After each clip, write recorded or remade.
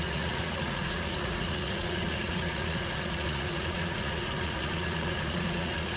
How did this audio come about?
remade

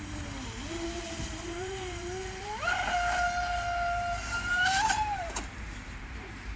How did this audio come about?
remade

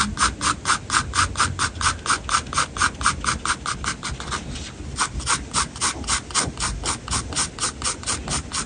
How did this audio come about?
recorded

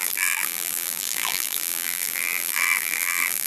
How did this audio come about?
remade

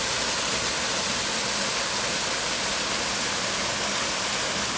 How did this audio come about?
recorded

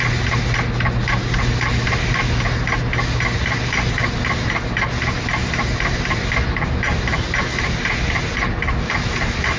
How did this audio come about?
recorded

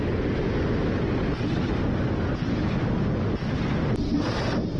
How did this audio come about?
recorded